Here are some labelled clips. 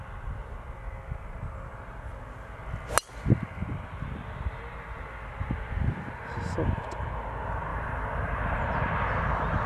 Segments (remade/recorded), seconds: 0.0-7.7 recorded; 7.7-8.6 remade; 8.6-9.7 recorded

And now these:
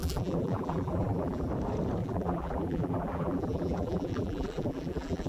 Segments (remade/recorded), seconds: 0.0-1.5 remade; 1.5-2.0 recorded; 2.0-5.3 remade

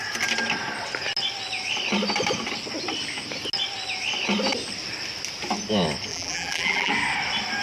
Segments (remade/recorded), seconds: 0.0-6.1 recorded; 6.1-6.9 remade; 6.9-7.6 recorded

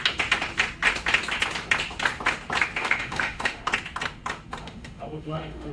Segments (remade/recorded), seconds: 0.0-2.8 recorded; 2.8-3.7 remade; 3.7-4.6 recorded; 4.6-5.7 remade